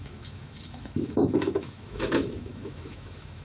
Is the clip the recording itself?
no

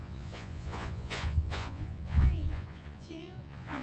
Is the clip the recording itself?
no